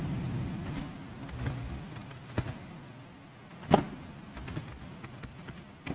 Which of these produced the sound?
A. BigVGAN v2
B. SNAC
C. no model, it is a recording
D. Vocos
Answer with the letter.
C